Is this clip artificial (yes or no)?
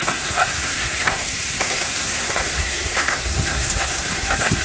yes